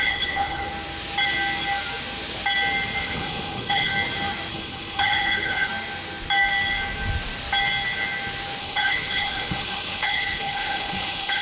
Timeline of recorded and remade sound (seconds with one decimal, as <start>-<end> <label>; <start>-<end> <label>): 0.0-0.7 remade; 0.7-3.0 recorded; 3.0-3.9 remade; 3.9-4.5 recorded; 4.5-5.7 remade; 5.7-8.6 recorded; 8.6-11.4 remade